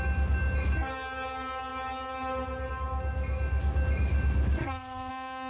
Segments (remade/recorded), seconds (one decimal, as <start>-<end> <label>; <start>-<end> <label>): 0.0-4.6 recorded; 4.6-5.1 remade; 5.1-5.5 recorded